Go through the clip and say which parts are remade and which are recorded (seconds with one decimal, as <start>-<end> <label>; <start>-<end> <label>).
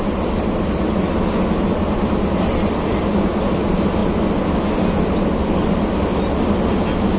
0.0-7.2 recorded